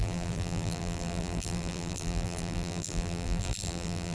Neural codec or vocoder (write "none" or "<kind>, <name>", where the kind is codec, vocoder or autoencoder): vocoder, BigVGAN v2